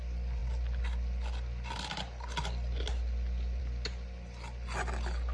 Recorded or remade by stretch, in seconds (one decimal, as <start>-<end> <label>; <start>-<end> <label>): 0.0-5.3 recorded